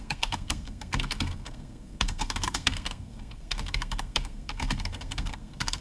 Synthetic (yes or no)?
yes